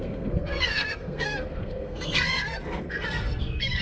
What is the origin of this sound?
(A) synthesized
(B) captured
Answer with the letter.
A